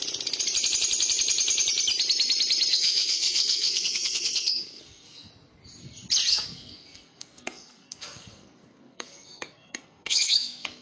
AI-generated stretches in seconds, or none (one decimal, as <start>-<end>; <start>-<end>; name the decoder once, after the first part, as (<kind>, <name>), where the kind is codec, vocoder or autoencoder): 2.7-5.3 (codec, SNAC); 6.3-10.8